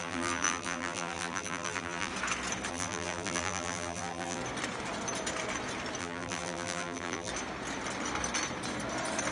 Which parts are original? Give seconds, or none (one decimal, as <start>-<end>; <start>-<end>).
2.1-2.7; 4.4-6.0; 7.3-9.3